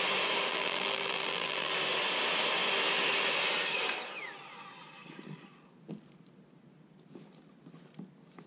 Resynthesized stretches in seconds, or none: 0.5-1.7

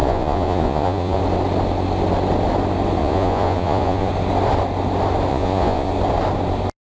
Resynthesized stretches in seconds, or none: 0.0-1.2; 3.0-4.1; 5.3-5.9

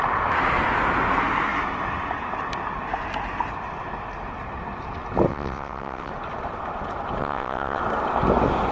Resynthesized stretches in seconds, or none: 5.3-6.1; 7.2-7.8

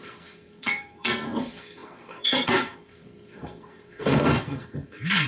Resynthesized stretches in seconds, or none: 0.0-5.3

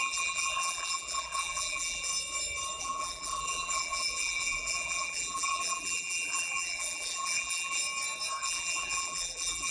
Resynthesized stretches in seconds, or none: 0.0-2.1; 2.8-7.8; 8.4-9.7